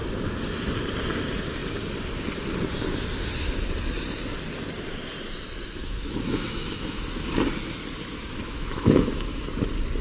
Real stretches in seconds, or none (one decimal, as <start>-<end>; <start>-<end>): 0.0-5.8; 7.3-8.1; 9.5-10.0